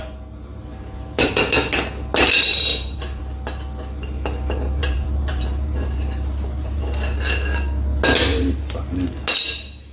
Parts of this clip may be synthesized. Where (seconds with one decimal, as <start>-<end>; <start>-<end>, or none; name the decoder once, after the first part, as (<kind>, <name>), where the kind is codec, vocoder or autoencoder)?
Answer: 0.5-1.3 (vocoder, BigVGAN v2); 2.5-3.2; 4.8-6.8; 8.3-8.9